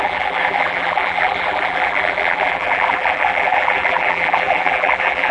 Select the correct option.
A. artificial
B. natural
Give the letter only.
A